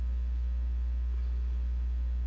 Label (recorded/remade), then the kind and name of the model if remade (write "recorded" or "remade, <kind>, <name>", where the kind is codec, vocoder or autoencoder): recorded